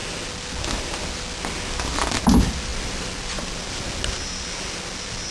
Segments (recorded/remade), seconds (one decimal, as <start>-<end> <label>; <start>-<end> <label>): 0.0-5.3 recorded